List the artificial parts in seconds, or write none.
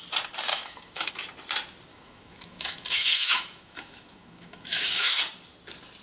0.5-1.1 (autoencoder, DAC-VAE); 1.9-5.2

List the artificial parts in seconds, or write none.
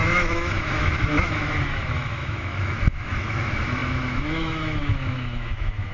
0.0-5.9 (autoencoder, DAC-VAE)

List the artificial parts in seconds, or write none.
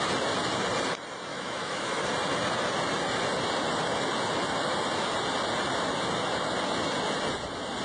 1.3-2.0 (autoencoder, DAC-VAE)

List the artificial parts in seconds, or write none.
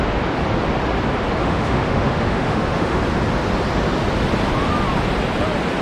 1.4-3.0 (autoencoder, DAC-VAE)